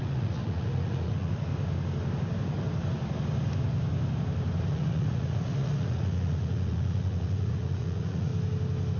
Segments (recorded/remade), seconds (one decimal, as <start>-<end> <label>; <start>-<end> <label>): 0.0-1.5 remade; 1.5-4.7 recorded; 4.7-8.3 remade; 8.3-9.0 recorded